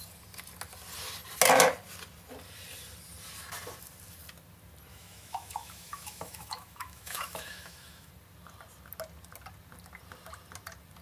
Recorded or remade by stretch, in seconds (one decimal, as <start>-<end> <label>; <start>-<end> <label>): 0.0-4.9 recorded; 4.9-8.1 remade; 8.1-11.0 recorded